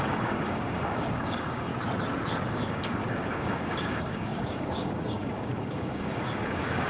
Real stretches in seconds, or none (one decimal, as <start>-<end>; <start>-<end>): 1.7-2.5